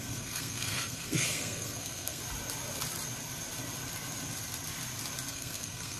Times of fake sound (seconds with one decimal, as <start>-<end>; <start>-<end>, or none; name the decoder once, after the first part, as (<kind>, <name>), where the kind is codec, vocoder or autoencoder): 0.0-2.2 (codec, SNAC); 5.3-6.0